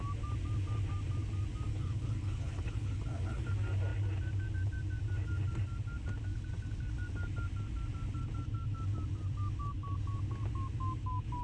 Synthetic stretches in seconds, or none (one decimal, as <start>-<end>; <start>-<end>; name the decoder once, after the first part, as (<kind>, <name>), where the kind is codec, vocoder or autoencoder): 1.7-3.5 (codec, HILCodec)